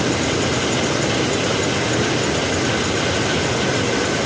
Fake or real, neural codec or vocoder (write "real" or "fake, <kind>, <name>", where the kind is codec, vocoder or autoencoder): real